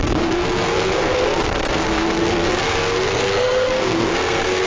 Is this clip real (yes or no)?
no